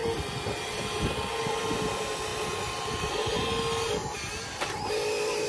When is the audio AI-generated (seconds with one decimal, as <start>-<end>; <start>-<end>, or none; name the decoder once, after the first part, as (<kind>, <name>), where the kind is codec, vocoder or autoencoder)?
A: none